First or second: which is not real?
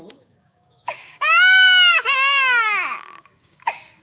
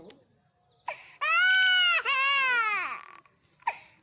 first